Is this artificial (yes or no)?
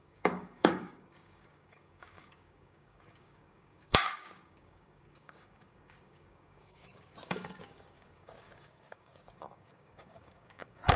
yes